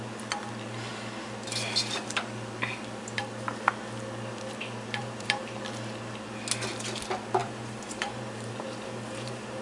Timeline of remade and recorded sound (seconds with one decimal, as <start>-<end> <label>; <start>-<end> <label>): 0.0-5.0 recorded; 5.0-5.6 remade; 5.6-7.4 recorded; 7.4-9.6 remade